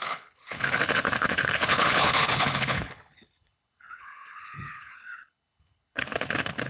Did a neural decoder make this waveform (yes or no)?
yes